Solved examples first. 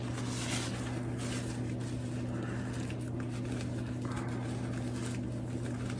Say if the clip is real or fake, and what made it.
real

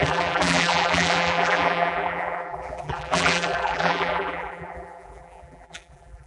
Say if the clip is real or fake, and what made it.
fake, vocoder, BigVGAN v2